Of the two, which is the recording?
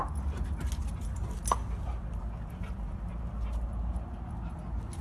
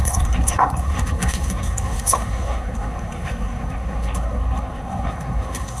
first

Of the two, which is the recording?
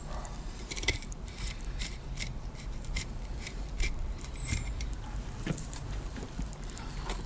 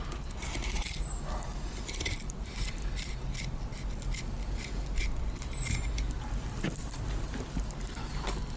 second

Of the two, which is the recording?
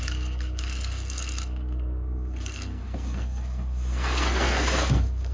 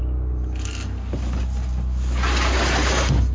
second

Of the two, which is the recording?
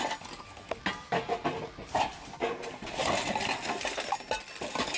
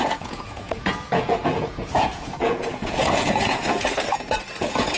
first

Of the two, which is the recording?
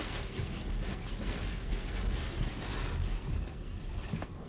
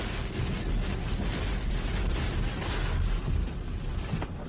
second